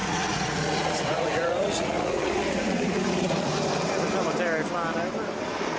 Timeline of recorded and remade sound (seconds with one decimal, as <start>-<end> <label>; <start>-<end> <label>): 0.0-3.5 remade; 3.5-5.8 recorded